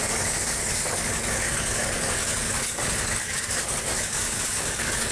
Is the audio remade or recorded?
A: remade